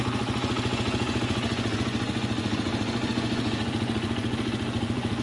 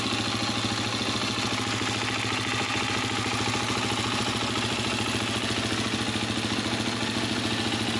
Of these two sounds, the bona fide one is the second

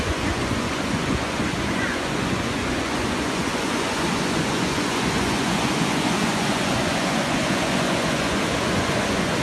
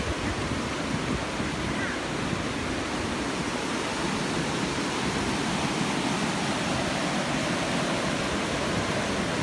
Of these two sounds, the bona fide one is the second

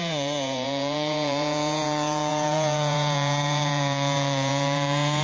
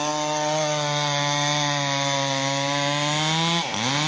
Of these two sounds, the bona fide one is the second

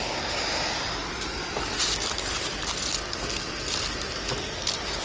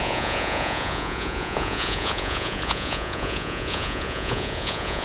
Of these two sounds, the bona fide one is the first